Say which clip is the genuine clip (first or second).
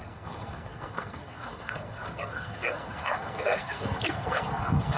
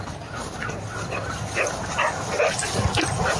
second